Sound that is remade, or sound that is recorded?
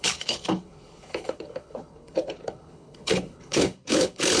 remade